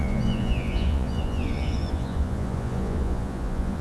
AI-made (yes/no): yes